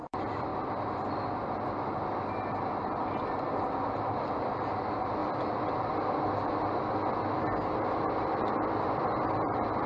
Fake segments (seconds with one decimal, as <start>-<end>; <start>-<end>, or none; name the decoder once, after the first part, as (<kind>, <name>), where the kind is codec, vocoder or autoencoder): 0.0-0.5 (vocoder, BigVGAN v2); 2.5-5.2; 8.1-9.9